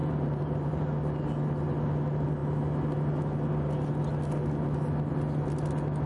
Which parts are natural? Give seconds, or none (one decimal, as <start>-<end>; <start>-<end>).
0.8-6.1